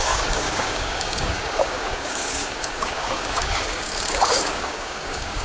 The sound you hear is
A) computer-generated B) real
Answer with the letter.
A